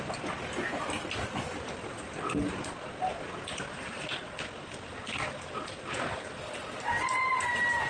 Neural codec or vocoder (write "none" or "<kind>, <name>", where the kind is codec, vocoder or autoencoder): none